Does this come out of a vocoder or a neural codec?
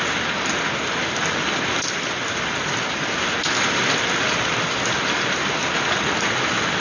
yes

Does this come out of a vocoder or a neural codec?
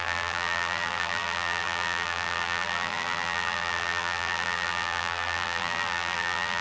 yes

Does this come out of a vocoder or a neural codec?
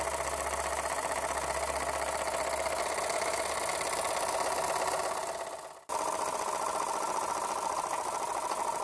no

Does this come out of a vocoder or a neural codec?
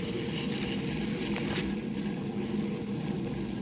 no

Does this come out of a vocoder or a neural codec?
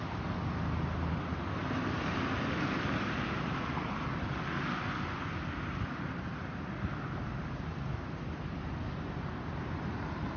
no